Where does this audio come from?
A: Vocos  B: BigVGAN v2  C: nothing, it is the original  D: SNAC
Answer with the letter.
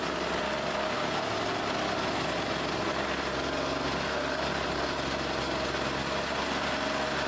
C